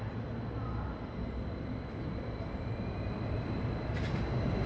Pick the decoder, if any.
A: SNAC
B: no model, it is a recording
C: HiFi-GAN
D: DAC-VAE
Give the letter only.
B